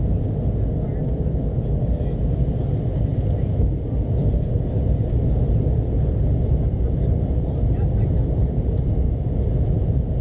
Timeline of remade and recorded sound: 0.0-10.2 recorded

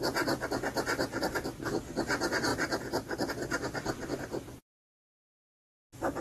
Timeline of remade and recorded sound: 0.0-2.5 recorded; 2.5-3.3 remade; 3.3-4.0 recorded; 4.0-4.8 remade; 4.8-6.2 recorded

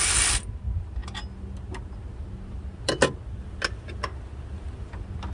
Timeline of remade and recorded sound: 0.0-5.3 recorded

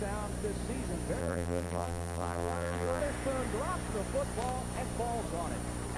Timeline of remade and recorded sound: 0.0-1.2 recorded; 1.2-3.0 remade; 3.0-6.0 recorded